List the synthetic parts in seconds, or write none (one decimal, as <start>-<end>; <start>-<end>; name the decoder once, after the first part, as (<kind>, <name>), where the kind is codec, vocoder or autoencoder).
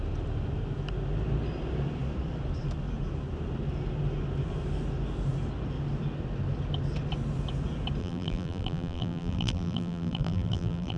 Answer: 8.0-11.0 (vocoder, BigVGAN v2)